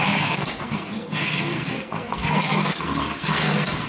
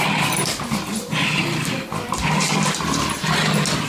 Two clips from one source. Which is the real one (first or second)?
second